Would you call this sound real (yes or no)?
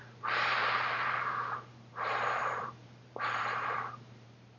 no